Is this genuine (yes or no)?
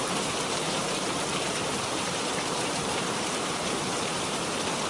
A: no